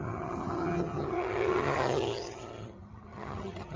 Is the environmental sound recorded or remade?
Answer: remade